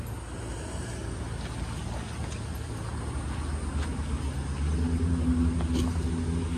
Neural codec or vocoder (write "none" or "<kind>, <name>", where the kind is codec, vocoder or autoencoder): none